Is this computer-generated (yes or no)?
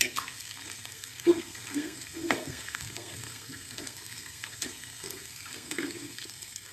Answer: yes